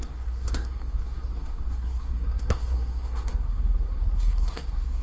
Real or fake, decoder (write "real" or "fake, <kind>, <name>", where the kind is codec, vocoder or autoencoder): fake, codec, SNAC